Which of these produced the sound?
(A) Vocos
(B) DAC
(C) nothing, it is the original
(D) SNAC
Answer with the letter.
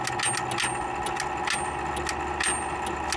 C